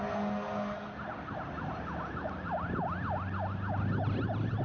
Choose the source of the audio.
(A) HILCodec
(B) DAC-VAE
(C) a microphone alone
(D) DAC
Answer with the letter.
C